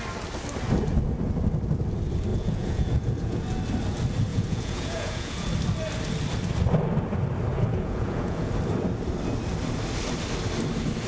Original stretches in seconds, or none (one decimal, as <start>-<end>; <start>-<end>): 0.0-2.3; 3.4-4.3; 5.5-7.5; 8.5-11.1